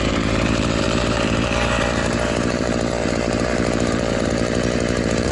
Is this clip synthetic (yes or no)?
yes